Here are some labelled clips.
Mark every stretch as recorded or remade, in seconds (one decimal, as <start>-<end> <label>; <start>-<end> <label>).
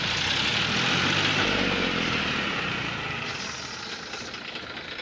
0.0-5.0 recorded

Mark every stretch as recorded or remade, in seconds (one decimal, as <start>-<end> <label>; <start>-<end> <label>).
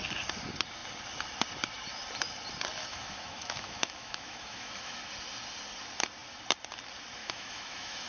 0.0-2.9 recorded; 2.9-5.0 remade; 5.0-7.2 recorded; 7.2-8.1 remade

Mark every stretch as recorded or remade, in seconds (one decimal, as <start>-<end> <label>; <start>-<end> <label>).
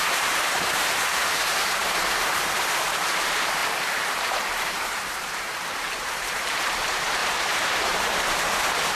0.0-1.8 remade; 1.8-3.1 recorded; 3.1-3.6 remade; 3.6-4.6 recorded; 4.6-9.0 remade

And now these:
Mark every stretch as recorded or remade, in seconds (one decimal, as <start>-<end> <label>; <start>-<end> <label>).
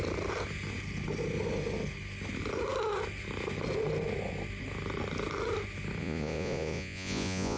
0.0-6.0 recorded; 6.0-7.6 remade